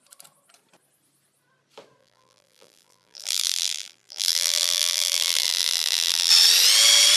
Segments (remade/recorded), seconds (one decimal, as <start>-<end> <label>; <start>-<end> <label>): 0.0-2.0 recorded; 2.0-6.3 remade; 6.3-7.2 recorded